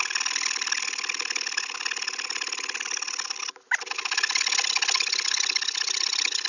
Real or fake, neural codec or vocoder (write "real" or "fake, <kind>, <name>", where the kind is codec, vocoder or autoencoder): real